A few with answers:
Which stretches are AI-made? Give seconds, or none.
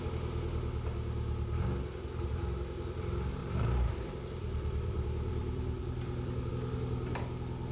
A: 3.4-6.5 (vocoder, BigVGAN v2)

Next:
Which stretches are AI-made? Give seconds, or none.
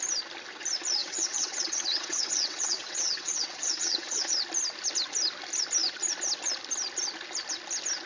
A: 1.0-4.3 (vocoder, WaveNeXt)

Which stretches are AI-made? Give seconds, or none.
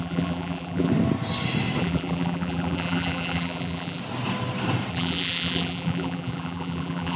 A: 0.0-0.9 (vocoder, BigVGAN v2); 1.8-4.0; 4.9-7.2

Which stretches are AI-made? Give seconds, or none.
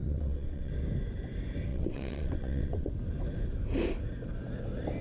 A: 0.0-0.7 (vocoder, WaveNeXt); 1.7-2.9